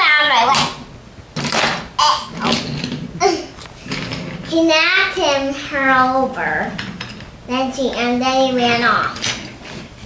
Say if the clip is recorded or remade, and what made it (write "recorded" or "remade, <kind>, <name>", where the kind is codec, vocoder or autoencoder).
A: recorded